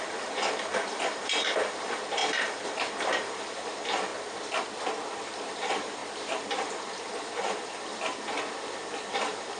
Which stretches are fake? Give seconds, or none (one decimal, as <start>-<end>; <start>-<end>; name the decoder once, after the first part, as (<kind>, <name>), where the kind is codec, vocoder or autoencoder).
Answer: 0.0-4.1 (vocoder, BigVGAN v2); 5.3-6.0; 6.5-7.9; 9.1-9.6